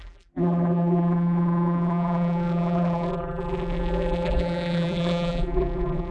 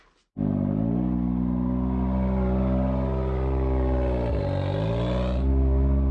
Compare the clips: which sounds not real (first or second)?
first